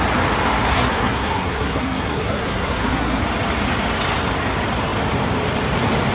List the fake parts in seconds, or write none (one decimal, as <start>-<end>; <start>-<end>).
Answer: 0.7-3.2